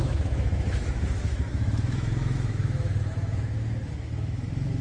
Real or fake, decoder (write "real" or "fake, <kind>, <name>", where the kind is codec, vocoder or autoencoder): fake, autoencoder, DAC-VAE